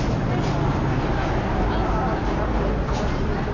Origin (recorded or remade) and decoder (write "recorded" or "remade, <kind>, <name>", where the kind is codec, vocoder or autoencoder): recorded